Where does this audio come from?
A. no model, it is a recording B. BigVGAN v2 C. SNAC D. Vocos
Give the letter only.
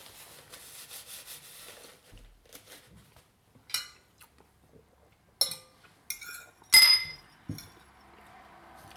A